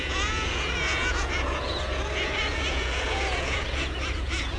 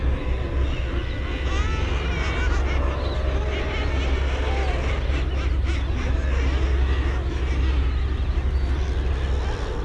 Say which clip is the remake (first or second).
first